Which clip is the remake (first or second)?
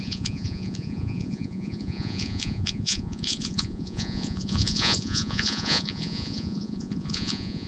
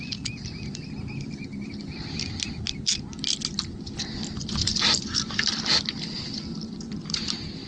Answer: first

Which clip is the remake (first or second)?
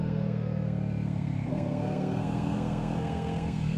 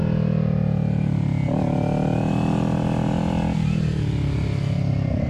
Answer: first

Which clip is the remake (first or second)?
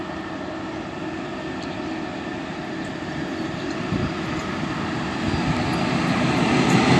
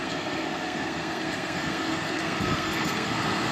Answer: second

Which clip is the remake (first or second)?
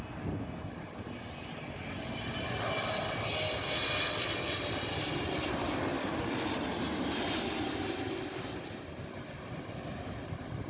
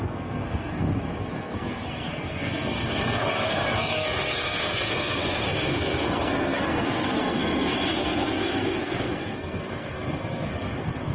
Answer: second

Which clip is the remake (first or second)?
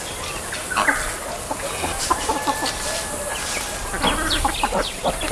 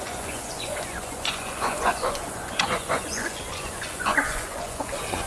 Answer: second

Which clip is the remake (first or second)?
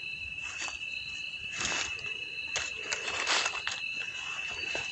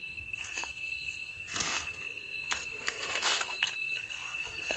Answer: second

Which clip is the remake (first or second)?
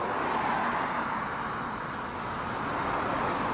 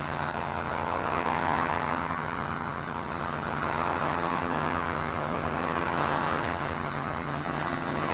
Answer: second